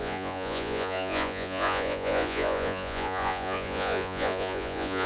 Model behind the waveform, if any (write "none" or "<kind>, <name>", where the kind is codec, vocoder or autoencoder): vocoder, Vocos